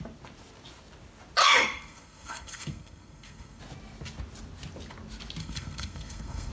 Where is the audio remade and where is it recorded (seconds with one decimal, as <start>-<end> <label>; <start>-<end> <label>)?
0.0-1.4 recorded; 1.4-3.6 remade; 3.6-5.4 recorded; 5.4-6.5 remade